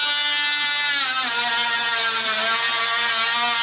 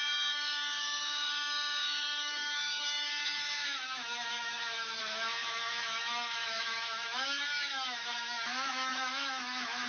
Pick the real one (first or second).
first